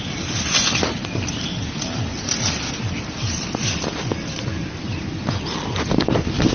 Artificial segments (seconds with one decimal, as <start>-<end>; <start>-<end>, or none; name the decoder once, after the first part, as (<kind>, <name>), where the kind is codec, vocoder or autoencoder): none